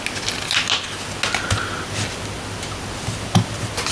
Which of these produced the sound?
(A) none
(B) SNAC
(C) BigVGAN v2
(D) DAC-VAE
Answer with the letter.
A